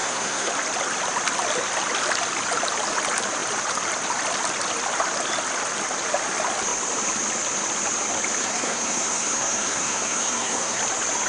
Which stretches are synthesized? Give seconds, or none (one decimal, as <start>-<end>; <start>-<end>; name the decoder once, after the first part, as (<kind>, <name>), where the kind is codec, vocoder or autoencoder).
0.0-0.5 (codec, SNAC); 8.4-10.8